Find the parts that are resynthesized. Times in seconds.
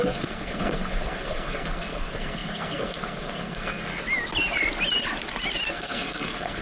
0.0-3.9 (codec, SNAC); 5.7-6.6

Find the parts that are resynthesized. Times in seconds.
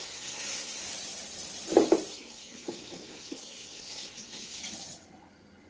0.0-0.8 (codec, SNAC); 2.1-4.6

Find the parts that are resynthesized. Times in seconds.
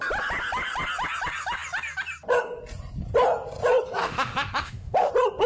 4.0-5.1 (autoencoder, DAC-VAE)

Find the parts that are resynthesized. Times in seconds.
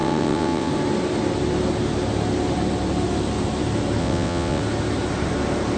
0.0-0.7 (vocoder, WaveNeXt); 4.0-4.6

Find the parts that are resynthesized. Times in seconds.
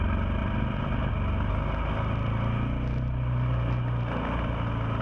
0.4-1.1 (vocoder, BigVGAN v2)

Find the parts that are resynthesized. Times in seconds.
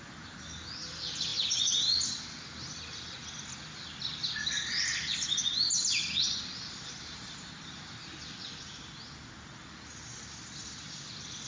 none